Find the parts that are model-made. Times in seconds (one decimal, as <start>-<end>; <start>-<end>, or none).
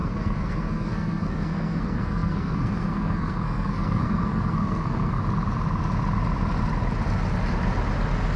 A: 0.0-5.2